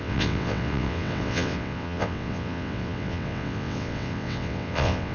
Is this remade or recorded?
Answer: remade